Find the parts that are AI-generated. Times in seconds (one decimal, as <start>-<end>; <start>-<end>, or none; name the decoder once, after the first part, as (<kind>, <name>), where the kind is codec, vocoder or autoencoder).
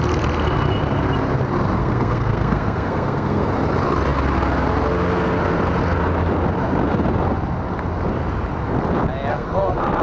1.8-3.5 (codec, SNAC); 9.3-10.0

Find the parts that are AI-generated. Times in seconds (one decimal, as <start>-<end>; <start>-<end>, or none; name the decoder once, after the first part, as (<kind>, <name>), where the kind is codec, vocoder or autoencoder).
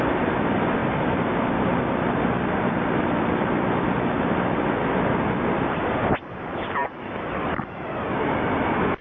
none